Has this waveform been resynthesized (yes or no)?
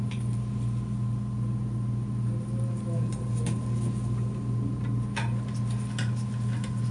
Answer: no